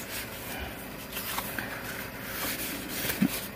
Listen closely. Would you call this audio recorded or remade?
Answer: recorded